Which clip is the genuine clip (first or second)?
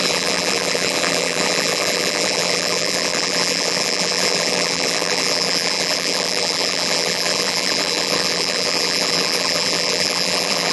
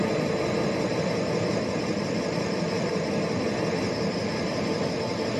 second